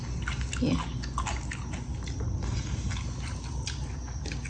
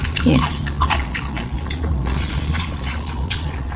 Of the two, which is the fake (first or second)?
second